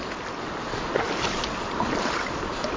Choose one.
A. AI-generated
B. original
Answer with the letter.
B